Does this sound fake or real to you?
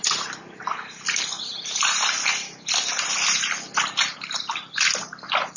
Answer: real